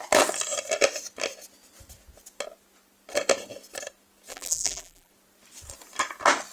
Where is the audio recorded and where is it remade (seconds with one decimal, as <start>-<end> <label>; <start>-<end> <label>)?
0.0-4.3 recorded; 4.3-5.1 remade; 5.1-6.5 recorded